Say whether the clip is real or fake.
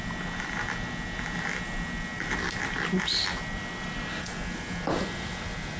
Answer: real